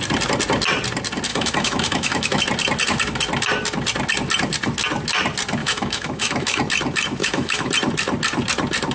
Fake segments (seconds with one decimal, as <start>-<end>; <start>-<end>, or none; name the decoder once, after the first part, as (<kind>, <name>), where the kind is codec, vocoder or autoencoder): 1.3-2.4 (autoencoder, DAC-VAE); 5.6-6.6; 7.2-7.7